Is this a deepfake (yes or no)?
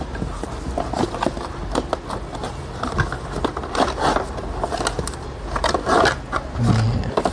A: no